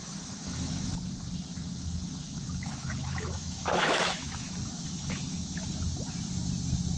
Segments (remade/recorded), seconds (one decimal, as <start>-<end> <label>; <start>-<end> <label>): 0.0-0.9 remade; 0.9-1.5 recorded; 1.5-5.7 remade; 5.7-7.0 recorded